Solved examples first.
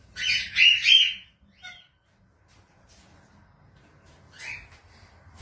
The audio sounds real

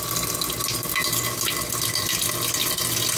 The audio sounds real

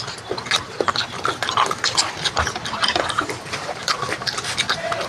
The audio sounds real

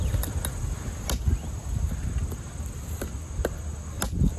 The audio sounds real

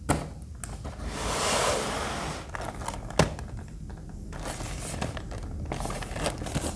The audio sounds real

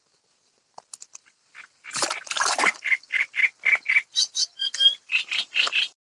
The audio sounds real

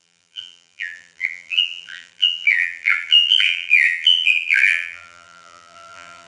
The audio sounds fake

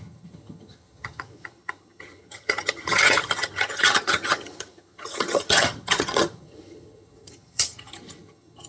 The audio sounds fake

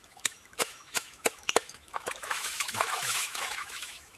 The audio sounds fake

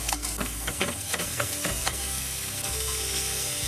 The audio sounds fake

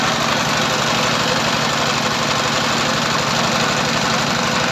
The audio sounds real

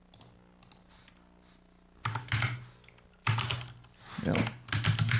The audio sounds real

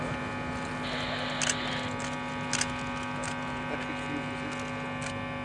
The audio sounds real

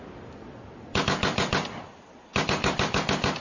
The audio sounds real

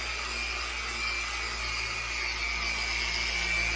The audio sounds real